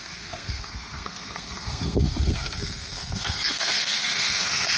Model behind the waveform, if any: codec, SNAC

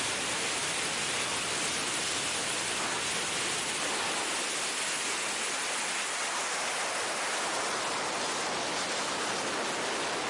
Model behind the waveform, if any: none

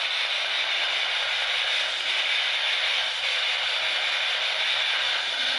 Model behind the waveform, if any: none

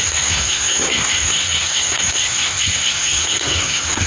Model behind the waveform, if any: codec, SNAC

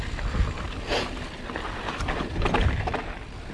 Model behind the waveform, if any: none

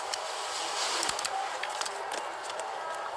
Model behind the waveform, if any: none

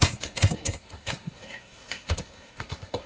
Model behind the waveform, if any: codec, SNAC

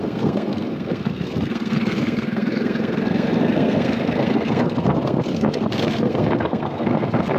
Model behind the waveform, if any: codec, SNAC